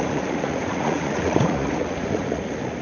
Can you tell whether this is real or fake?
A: fake